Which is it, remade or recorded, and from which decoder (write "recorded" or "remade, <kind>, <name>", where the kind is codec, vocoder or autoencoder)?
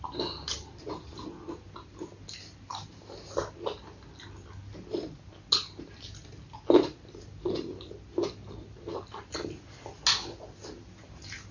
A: recorded